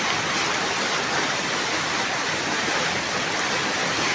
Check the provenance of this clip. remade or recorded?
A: recorded